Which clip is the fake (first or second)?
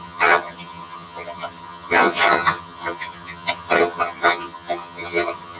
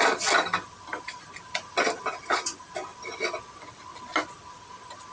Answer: first